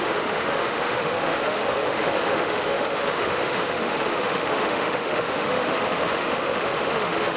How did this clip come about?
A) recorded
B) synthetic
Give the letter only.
B